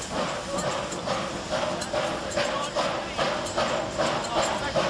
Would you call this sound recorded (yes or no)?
yes